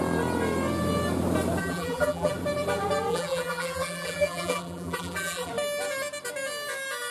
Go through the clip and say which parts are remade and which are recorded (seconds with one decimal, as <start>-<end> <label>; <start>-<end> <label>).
0.0-1.6 recorded; 1.6-2.3 remade; 2.3-3.1 recorded; 3.1-5.5 remade; 5.5-7.1 recorded